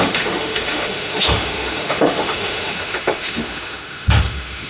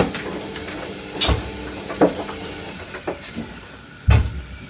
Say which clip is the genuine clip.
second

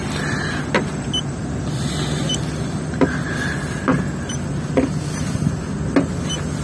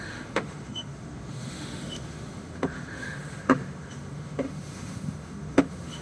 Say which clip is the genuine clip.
first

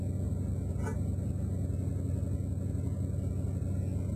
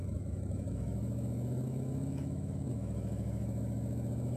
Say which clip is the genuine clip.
first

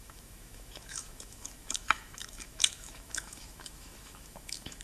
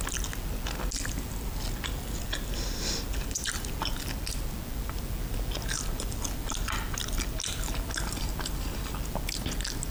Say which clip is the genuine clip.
second